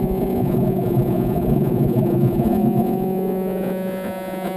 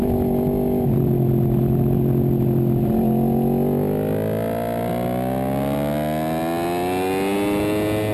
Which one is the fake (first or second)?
first